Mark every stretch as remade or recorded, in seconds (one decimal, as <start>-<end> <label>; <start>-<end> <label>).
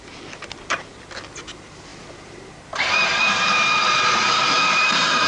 0.0-5.3 remade